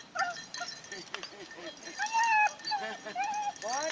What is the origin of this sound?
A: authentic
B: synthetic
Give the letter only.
A